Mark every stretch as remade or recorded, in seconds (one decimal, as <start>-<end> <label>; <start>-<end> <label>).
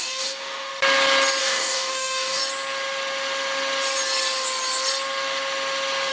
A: 0.0-0.7 remade; 0.7-1.4 recorded; 1.4-2.4 remade; 2.4-6.1 recorded